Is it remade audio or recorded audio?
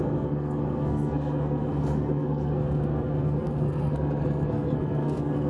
remade